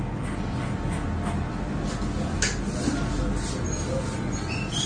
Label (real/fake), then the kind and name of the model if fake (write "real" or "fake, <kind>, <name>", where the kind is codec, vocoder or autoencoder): real